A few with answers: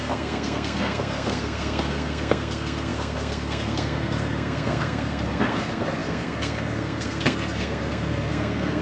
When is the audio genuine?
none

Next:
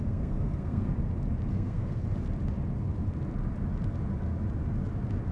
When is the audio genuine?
0.9-1.5; 2.0-5.3

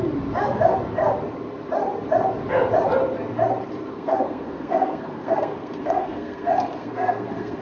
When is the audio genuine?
0.0-3.9

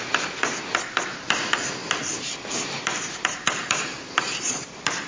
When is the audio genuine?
0.0-5.1

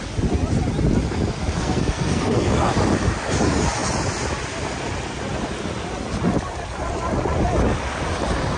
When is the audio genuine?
0.0-1.6; 2.7-8.6